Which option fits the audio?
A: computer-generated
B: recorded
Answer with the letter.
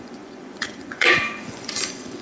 A